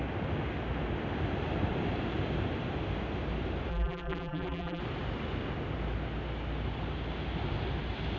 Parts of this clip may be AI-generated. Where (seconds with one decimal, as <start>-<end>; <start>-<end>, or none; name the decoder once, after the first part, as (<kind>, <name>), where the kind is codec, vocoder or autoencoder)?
3.7-4.8 (vocoder, BigVGAN v2)